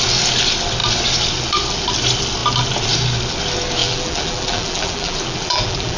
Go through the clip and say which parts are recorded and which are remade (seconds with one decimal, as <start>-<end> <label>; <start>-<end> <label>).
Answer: 0.0-3.8 recorded; 3.8-6.0 remade